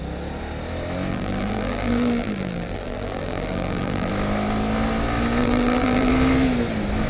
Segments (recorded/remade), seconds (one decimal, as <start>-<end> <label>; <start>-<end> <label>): 0.0-1.1 recorded; 1.1-4.1 remade; 4.1-5.4 recorded; 5.4-6.1 remade; 6.1-7.1 recorded